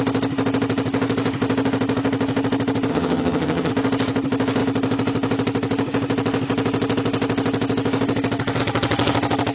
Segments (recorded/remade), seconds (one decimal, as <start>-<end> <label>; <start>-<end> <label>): 0.0-2.9 recorded; 2.9-3.7 remade; 3.7-9.5 recorded